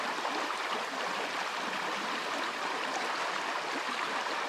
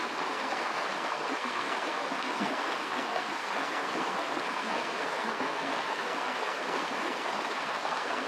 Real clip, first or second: first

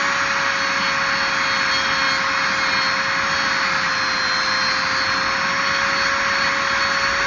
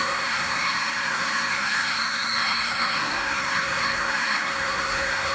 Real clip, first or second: first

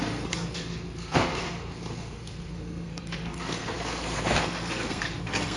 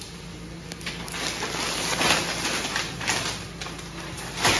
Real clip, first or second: second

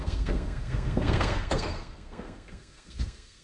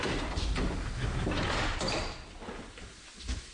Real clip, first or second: second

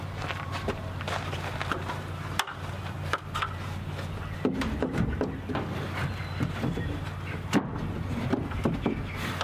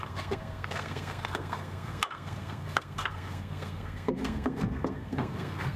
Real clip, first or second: first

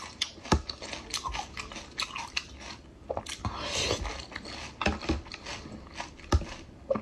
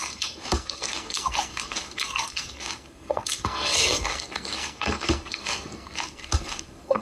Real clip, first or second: first